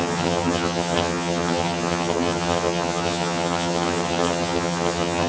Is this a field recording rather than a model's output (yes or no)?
no